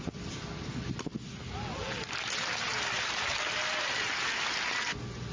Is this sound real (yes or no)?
yes